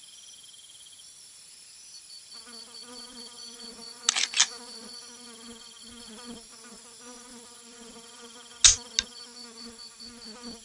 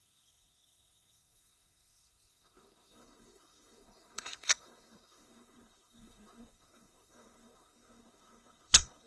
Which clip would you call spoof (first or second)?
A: second